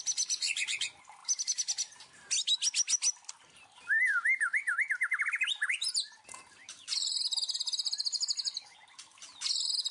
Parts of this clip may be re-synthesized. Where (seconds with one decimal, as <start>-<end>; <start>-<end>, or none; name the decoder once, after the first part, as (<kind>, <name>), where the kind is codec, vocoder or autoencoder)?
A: none